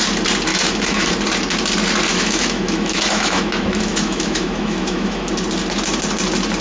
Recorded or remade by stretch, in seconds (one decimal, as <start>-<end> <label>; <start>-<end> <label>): 0.0-0.5 recorded; 0.5-1.1 remade; 1.1-2.1 recorded; 2.1-5.3 remade; 5.3-6.6 recorded